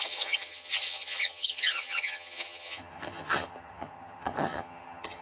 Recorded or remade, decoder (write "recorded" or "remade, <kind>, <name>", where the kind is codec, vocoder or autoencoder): remade, vocoder, HiFi-GAN